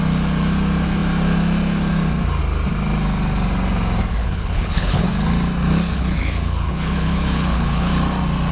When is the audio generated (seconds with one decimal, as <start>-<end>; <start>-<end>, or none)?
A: 4.2-5.1; 5.9-7.9